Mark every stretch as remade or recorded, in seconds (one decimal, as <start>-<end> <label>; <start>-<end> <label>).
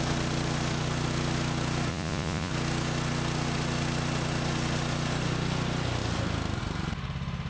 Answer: 0.0-1.9 recorded; 1.9-2.5 remade; 2.5-7.5 recorded